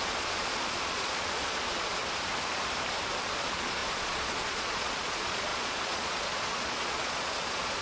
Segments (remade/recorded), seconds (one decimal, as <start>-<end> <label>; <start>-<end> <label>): 0.0-2.0 remade; 2.0-3.3 recorded; 3.3-7.8 remade